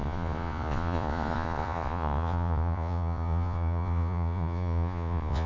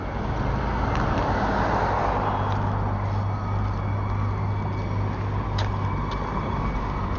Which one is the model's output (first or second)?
first